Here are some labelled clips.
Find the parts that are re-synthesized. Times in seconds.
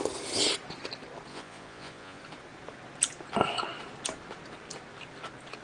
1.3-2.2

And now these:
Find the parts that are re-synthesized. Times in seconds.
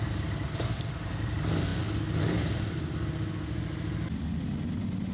none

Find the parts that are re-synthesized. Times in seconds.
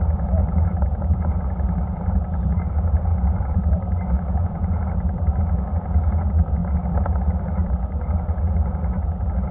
0.4-2.7; 3.1-5.4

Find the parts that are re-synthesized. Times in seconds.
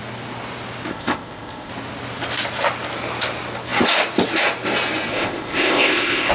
0.9-1.7; 5.1-6.3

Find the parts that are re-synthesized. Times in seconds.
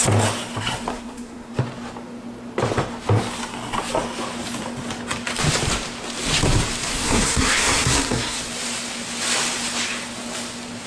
0.9-1.5; 6.9-8.4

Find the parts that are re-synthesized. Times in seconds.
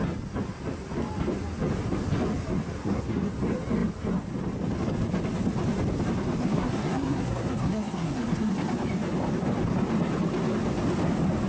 2.8-3.3; 6.4-8.5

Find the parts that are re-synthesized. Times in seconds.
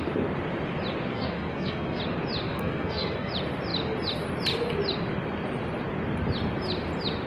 1.1-2.0; 2.5-3.3